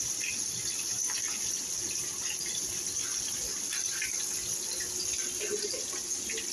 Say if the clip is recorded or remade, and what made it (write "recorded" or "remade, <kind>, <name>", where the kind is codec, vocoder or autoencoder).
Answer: recorded